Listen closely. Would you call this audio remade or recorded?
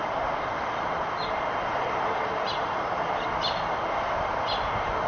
recorded